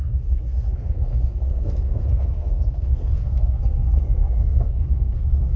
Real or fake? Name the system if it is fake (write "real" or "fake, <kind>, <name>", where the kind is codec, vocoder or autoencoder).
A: fake, codec, SNAC